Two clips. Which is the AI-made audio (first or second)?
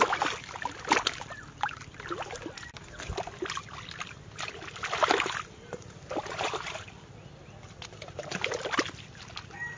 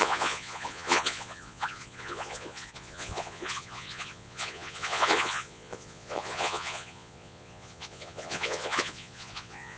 second